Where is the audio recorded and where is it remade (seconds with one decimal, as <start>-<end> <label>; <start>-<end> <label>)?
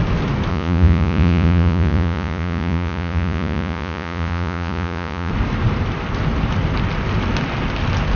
0.0-0.5 recorded; 0.5-5.3 remade; 5.3-8.2 recorded